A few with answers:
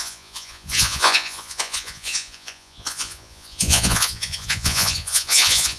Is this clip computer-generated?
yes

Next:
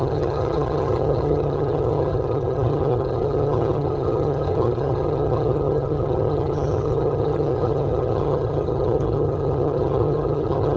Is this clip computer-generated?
yes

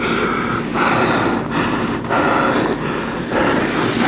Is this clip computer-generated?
no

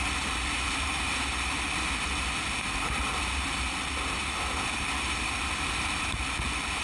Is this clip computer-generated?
no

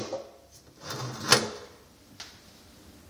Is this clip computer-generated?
no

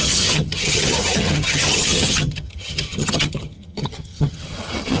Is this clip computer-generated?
yes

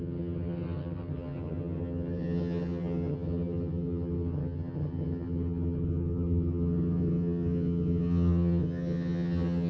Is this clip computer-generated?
yes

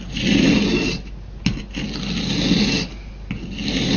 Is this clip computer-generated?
no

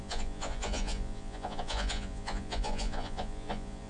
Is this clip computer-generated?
yes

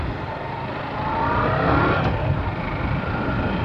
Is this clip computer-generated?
no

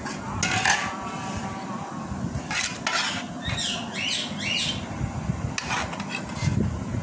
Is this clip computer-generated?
no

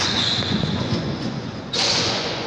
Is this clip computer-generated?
yes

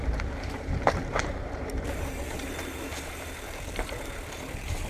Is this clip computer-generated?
yes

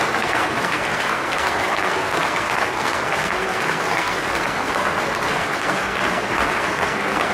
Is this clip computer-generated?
yes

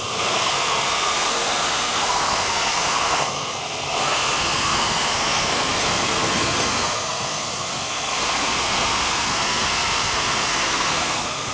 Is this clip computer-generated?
yes